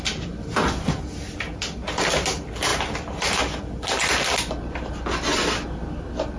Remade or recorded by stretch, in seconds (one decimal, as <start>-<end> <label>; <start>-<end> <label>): 0.0-6.4 recorded